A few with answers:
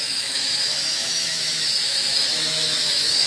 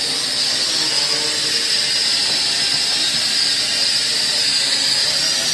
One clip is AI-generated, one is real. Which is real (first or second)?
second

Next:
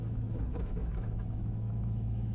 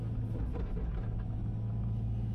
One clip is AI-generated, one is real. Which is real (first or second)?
second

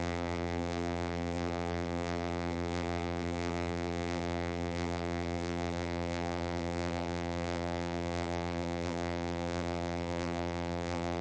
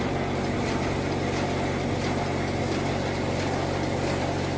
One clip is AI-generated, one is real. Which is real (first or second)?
second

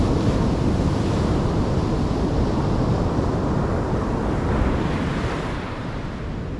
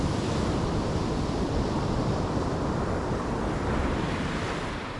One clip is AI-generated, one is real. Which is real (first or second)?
first